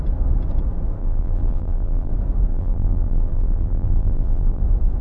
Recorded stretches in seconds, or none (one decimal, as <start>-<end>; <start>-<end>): 0.0-1.0; 2.1-2.5; 4.6-5.0